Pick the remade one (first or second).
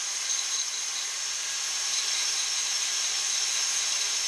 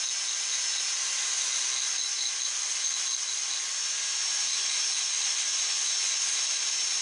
first